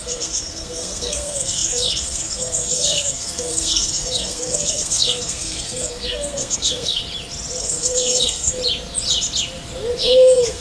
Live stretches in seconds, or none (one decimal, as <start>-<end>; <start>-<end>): 7.0-7.6; 8.6-10.0